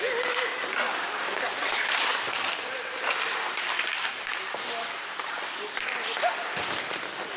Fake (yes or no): yes